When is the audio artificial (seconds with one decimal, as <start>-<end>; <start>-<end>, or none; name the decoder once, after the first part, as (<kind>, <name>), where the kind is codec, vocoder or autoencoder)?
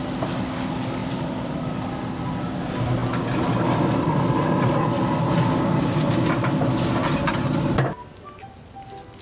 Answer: 1.0-1.7 (vocoder, BigVGAN v2); 7.0-7.5